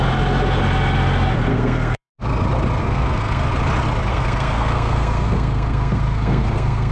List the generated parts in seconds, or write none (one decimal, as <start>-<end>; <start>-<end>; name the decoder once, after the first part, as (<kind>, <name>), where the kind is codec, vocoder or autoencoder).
1.5-2.1 (codec, SNAC); 2.8-3.5; 4.1-6.9